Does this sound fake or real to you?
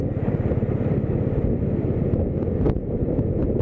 real